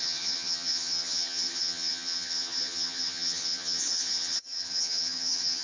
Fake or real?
fake